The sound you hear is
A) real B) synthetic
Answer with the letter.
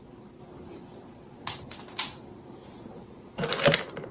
A